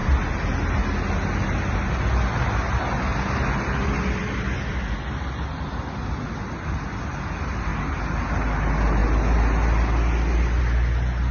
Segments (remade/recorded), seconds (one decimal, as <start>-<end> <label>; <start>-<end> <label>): 0.0-11.3 recorded